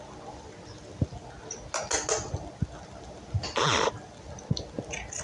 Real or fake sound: real